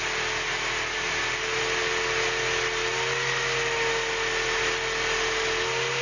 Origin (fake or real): real